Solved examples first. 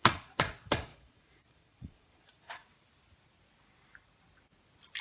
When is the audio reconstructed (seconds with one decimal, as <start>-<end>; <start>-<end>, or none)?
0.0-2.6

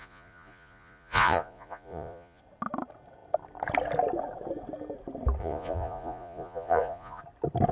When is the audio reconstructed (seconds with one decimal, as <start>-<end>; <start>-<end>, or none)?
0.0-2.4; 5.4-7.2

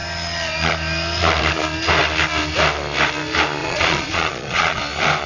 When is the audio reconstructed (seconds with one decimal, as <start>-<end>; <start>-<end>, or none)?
3.6-4.8

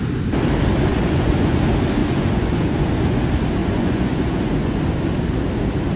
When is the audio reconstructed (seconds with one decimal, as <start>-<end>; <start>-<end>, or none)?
0.9-1.6; 2.0-3.2; 3.6-4.8

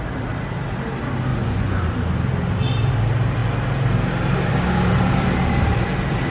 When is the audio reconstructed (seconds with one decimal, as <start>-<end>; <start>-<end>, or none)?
1.3-1.9